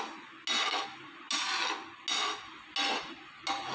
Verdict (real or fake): real